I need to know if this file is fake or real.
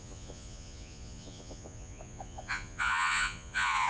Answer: fake